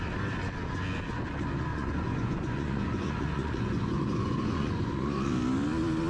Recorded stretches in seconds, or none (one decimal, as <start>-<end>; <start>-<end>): 0.0-1.7; 5.3-6.1